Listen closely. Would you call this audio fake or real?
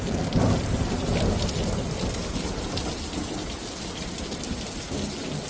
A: real